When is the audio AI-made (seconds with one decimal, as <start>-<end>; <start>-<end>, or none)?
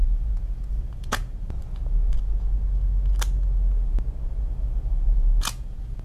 0.0-1.3; 4.6-6.0